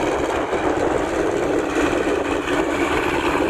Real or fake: real